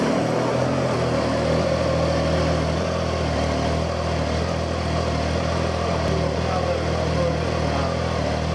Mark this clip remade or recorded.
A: recorded